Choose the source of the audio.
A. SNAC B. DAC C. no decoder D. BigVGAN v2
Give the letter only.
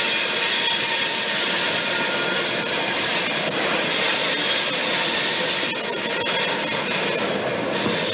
C